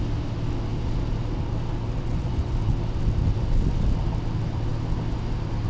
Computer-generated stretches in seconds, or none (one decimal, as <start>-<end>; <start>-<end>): 2.1-2.7